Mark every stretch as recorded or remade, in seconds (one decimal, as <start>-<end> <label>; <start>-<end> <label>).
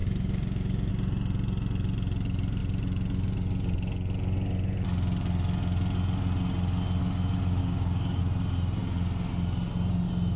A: 0.0-0.9 remade; 0.9-7.6 recorded; 7.6-8.2 remade; 8.2-10.4 recorded